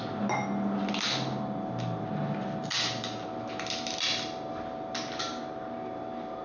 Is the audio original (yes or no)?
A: yes